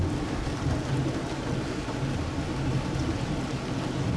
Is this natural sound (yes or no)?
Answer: yes